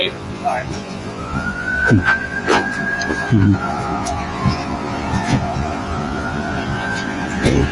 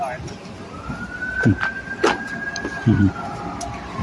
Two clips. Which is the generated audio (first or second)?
first